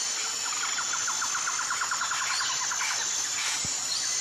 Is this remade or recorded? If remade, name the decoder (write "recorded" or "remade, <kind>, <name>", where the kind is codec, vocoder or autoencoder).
recorded